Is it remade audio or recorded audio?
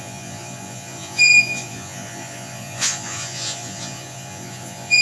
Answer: remade